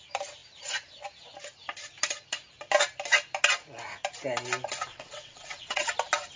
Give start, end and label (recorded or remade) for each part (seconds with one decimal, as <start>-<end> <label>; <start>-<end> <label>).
0.0-4.9 recorded; 4.9-5.9 remade; 5.9-6.4 recorded

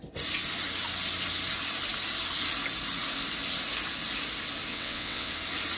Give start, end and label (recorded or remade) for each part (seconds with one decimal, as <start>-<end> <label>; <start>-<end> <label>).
0.0-4.7 recorded; 4.7-5.3 remade; 5.3-5.8 recorded

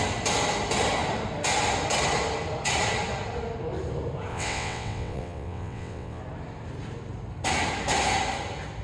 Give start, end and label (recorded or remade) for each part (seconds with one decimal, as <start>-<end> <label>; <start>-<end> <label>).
0.0-4.3 recorded; 4.3-6.2 remade; 6.2-8.8 recorded

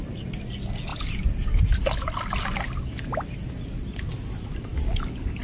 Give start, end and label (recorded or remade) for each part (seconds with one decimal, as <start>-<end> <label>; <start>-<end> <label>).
0.0-5.4 recorded